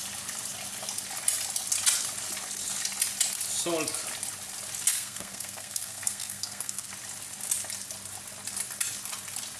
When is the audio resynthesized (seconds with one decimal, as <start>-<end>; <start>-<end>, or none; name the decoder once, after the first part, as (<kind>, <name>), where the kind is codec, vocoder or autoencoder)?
4.9-6.9 (codec, SNAC)